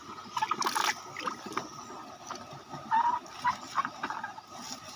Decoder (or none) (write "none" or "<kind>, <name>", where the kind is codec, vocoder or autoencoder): none